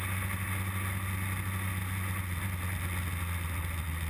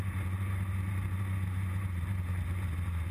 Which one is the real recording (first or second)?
first